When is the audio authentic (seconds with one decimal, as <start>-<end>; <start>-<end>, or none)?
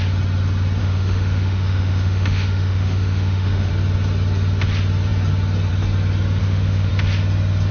0.0-0.8; 3.7-6.4; 6.9-7.7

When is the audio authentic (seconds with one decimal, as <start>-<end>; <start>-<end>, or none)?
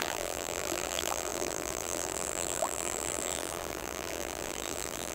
none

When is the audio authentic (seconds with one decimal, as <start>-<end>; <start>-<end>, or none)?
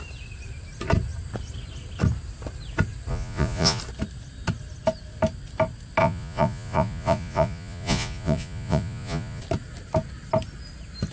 0.0-3.1; 3.8-6.0; 9.4-11.1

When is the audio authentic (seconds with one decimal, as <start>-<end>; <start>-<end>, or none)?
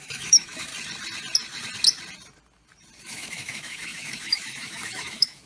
0.7-3.0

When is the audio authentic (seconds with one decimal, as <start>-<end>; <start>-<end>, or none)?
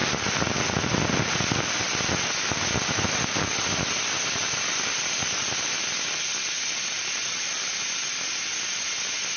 0.0-9.4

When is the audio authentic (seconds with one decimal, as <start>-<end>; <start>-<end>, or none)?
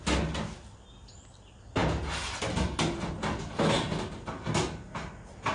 0.0-5.5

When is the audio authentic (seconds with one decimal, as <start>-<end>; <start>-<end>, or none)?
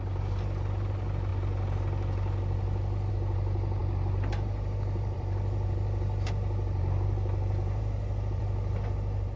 1.3-3.1